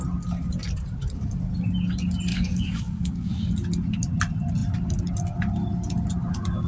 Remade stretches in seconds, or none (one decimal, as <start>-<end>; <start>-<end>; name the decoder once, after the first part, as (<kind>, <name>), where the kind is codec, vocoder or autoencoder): 2.3-3.5 (codec, DAC)